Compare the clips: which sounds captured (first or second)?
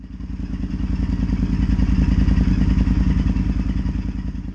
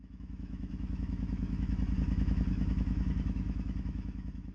first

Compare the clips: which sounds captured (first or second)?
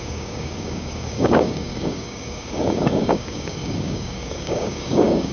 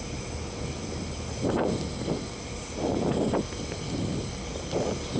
second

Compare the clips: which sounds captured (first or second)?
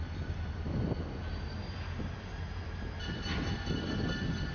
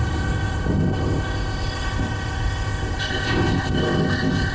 first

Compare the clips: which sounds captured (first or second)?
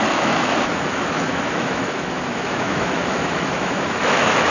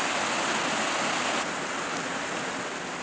second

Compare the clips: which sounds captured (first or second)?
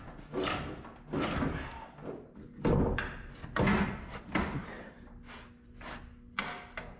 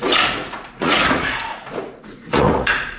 first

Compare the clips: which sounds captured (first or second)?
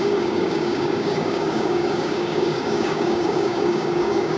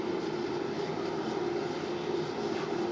second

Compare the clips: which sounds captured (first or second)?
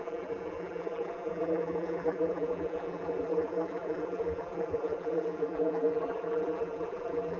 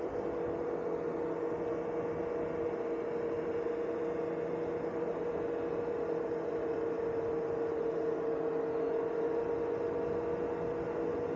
second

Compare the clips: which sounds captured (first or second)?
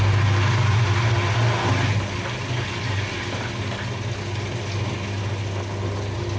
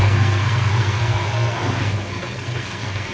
first